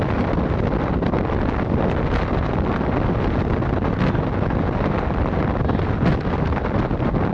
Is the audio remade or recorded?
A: recorded